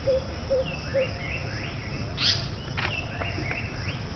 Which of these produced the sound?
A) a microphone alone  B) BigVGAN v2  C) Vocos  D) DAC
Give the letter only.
A